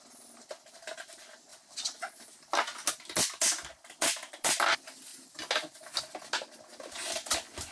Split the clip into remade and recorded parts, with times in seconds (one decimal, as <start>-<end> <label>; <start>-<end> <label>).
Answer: 0.0-7.7 recorded